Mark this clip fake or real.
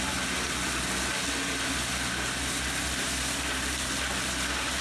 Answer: real